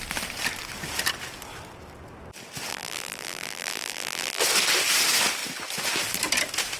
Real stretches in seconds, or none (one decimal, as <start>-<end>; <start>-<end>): 0.0-2.7; 4.4-6.8